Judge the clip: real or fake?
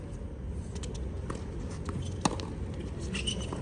real